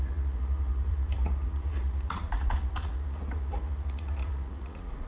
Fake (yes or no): yes